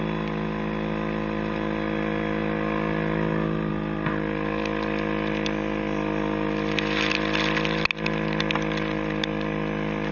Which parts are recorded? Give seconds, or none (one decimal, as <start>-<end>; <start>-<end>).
0.0-10.1